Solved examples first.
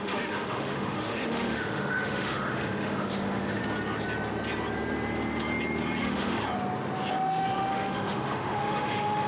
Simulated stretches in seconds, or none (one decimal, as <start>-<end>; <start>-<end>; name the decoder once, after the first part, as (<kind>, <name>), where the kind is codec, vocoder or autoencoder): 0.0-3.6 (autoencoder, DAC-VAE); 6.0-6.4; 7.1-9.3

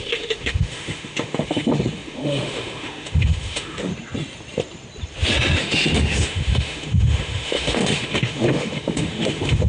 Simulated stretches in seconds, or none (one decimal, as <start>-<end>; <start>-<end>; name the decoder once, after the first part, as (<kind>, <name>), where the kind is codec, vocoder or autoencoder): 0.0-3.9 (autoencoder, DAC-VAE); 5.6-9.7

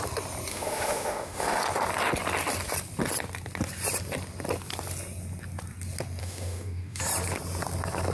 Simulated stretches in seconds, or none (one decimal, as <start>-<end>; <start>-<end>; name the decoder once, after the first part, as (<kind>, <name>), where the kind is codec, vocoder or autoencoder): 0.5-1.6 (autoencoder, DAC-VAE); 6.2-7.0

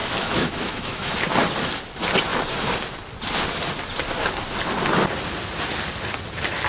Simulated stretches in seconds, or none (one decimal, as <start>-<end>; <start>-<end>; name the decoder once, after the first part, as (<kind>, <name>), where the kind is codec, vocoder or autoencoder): 0.0-1.1 (autoencoder, DAC-VAE)

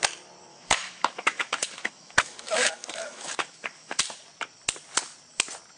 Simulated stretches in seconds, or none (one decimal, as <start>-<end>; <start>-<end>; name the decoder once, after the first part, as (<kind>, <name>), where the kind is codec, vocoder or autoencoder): 0.5-4.0 (autoencoder, DAC-VAE)

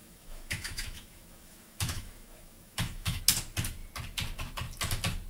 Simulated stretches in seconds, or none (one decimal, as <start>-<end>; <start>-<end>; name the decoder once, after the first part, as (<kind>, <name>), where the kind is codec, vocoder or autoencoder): 0.0-3.2 (autoencoder, DAC-VAE)